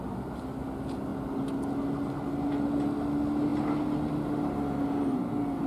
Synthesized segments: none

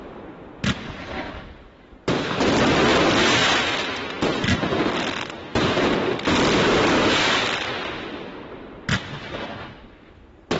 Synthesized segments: none